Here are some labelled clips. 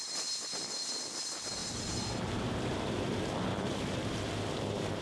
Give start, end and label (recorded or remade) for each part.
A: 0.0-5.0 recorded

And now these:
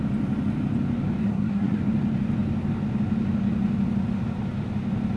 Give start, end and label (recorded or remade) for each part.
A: 0.0-1.2 recorded; 1.2-1.8 remade; 1.8-5.2 recorded

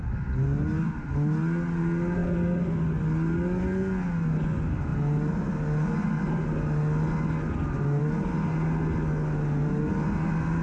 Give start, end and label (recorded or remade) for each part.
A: 0.0-10.6 recorded

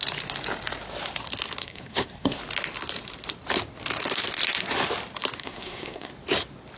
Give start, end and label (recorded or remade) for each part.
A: 0.0-1.6 recorded; 1.6-2.4 remade; 2.4-5.4 recorded; 5.4-6.1 remade; 6.1-6.8 recorded

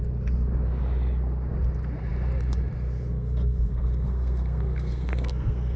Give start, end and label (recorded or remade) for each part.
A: 0.0-3.1 recorded; 3.1-5.8 remade

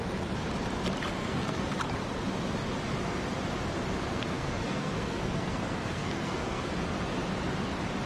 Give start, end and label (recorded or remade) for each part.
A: 0.0-1.2 recorded; 1.2-1.8 remade; 1.8-4.1 recorded; 4.1-6.6 remade; 6.6-8.1 recorded

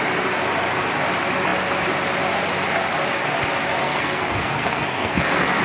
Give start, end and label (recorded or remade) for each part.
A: 0.0-3.8 recorded; 3.8-5.6 remade

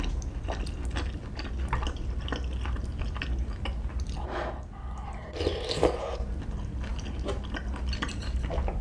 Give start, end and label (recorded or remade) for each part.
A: 0.0-8.8 recorded